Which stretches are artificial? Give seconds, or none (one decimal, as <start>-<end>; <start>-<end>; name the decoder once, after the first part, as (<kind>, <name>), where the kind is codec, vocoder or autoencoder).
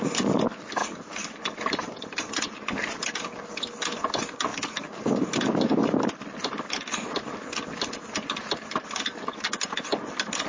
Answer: 0.8-3.0 (vocoder, BigVGAN v2)